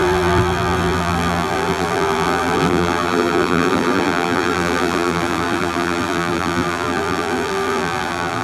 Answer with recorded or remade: remade